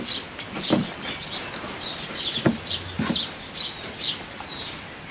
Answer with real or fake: real